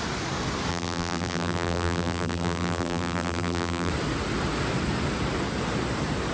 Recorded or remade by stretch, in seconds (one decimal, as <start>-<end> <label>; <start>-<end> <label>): 0.0-0.7 recorded; 0.7-3.9 remade; 3.9-6.3 recorded